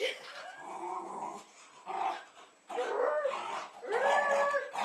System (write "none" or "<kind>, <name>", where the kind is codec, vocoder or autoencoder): none